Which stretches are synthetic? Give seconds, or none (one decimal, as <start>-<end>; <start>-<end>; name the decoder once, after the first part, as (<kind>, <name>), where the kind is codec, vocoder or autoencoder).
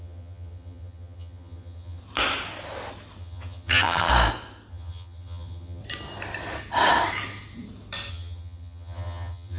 0.0-2.0 (vocoder, HiFi-GAN); 3.2-4.1; 4.7-5.8; 8.1-9.6